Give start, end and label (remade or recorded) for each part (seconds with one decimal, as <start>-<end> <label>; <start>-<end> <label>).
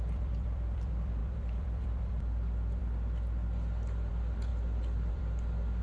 0.0-2.8 remade; 2.8-4.1 recorded; 4.1-5.8 remade